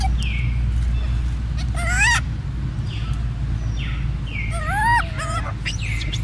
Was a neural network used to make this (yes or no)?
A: no